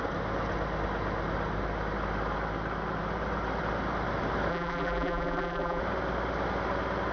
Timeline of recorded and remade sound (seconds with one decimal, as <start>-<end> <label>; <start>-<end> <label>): 0.0-4.5 recorded; 4.5-5.8 remade; 5.8-7.1 recorded

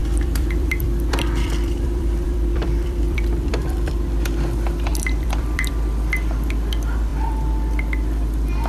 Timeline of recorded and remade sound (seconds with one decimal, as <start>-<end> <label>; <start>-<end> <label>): 0.0-3.9 remade; 3.9-4.9 recorded; 4.9-5.7 remade; 5.7-8.7 recorded

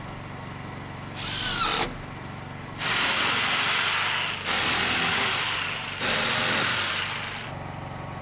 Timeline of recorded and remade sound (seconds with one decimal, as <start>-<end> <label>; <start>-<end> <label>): 0.0-8.2 recorded

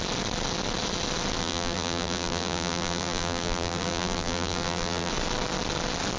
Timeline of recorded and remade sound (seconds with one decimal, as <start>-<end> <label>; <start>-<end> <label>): 0.0-1.4 recorded; 1.4-5.1 remade; 5.1-6.2 recorded